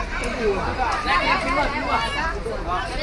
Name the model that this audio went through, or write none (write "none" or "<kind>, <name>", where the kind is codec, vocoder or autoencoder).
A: vocoder, BigVGAN v2